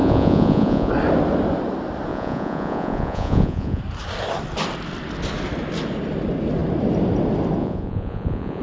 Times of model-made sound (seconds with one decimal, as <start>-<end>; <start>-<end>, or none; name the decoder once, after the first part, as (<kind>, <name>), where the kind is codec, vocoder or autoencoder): 0.0-0.9 (vocoder, Vocos); 2.1-3.8; 7.6-8.6